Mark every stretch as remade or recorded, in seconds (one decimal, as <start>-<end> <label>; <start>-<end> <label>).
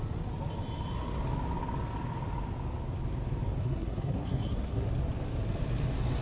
0.0-3.6 recorded; 3.6-4.9 remade; 4.9-6.2 recorded